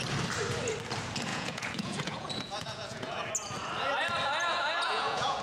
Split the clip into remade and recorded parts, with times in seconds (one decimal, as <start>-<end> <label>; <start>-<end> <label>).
0.0-1.3 recorded; 1.3-3.3 remade; 3.3-4.5 recorded; 4.5-5.4 remade